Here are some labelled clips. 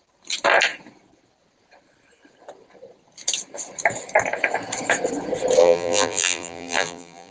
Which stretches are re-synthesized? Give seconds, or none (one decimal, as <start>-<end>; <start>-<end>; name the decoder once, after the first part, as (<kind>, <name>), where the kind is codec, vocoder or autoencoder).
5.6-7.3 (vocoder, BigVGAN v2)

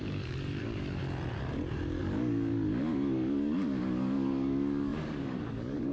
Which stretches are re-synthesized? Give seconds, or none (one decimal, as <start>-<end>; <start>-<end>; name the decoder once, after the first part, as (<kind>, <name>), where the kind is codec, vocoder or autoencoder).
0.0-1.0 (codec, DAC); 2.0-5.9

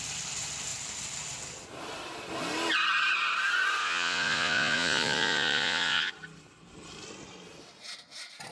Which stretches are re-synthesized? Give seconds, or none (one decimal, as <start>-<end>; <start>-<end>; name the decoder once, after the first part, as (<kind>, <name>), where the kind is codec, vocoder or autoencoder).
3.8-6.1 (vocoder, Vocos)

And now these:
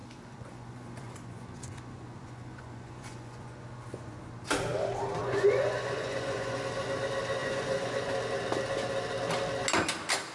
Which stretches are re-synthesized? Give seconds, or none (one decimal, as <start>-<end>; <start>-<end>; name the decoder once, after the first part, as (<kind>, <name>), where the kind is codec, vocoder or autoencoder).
0.0-4.3 (vocoder, Vocos); 5.2-6.6; 7.4-8.1

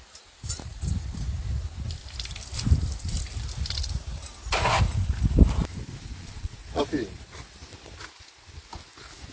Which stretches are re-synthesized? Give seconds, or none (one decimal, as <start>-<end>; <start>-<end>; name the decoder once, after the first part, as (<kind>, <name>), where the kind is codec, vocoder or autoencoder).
6.2-6.8 (vocoder, Vocos)

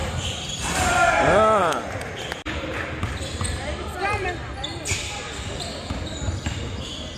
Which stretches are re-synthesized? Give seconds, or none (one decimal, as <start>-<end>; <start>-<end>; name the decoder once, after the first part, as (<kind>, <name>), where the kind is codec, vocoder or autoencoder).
0.0-0.6 (vocoder, BigVGAN v2); 1.6-5.9